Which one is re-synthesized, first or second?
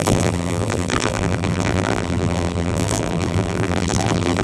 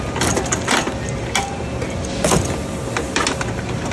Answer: first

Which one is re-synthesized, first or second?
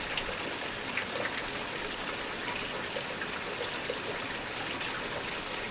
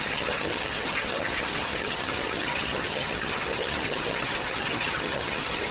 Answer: second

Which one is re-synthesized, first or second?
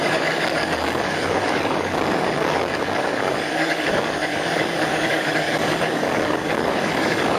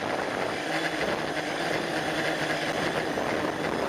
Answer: first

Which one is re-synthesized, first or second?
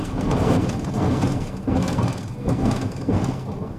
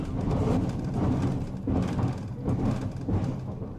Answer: first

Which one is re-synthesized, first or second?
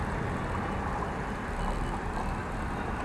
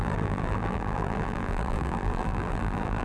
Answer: second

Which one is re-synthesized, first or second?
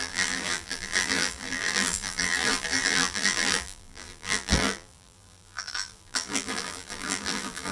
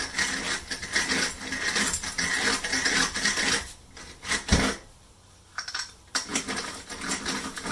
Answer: first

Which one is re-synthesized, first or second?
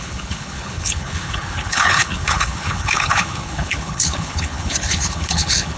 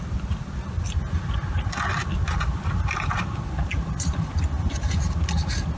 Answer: first